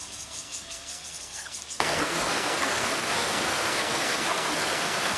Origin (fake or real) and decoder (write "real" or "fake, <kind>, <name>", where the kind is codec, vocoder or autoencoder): fake, codec, SNAC